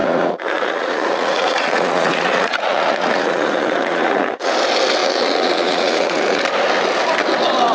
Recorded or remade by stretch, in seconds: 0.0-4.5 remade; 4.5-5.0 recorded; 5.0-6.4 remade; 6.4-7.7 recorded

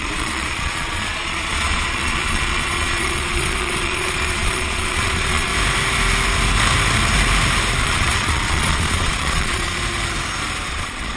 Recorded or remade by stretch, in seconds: 0.0-5.5 remade; 5.5-7.8 recorded; 7.8-9.8 remade; 9.8-10.7 recorded; 10.7-11.2 remade

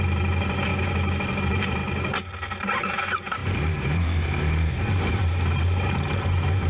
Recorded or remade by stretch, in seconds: 0.0-0.7 remade; 0.7-1.4 recorded; 1.4-1.8 remade; 1.8-2.5 recorded; 2.5-6.7 remade

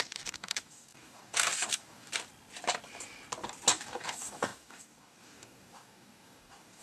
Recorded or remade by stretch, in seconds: 0.0-2.1 remade; 2.1-3.7 recorded; 3.7-6.8 remade